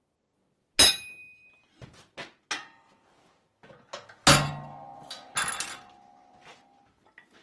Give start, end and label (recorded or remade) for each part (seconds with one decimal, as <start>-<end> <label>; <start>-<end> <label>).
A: 0.0-7.4 recorded